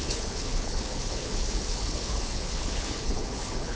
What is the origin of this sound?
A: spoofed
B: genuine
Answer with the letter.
A